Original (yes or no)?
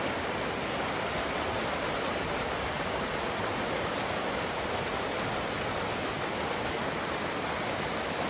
yes